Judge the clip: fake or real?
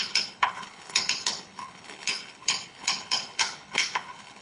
fake